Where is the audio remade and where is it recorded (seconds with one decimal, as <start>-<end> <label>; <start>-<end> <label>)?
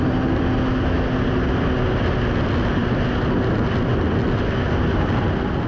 0.0-5.7 recorded